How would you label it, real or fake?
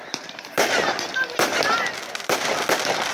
fake